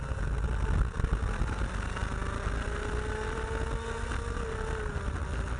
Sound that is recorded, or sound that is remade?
recorded